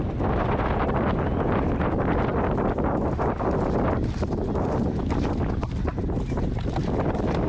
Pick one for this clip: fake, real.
real